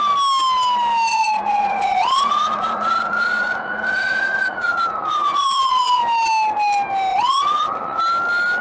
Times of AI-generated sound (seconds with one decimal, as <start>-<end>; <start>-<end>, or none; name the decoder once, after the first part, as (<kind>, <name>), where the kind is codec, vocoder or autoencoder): 1.1-6.0 (vocoder, Vocos); 7.1-8.0